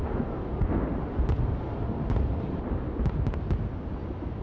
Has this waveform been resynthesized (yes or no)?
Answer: no